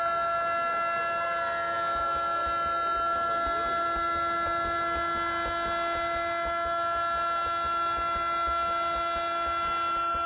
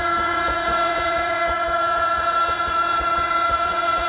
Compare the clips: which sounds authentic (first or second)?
first